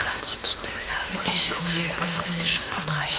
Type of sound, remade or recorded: remade